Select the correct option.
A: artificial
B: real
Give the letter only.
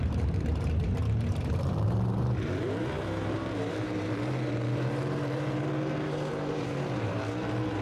A